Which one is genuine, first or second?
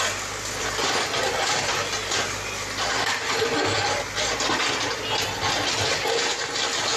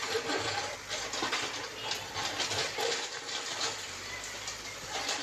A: first